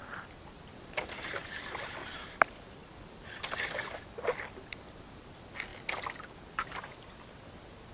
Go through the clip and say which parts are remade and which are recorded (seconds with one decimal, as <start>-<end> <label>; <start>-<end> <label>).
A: 0.0-7.9 recorded